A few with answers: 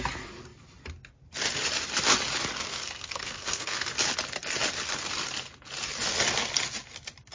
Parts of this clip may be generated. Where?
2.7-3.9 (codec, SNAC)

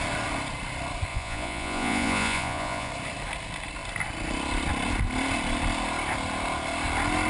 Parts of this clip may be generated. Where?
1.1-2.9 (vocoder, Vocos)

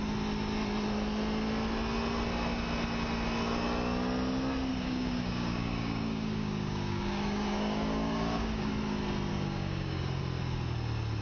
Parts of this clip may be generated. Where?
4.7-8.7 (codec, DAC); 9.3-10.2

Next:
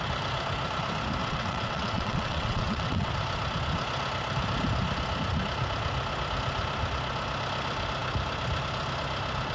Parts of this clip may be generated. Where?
1.2-3.1 (vocoder, WaveNeXt)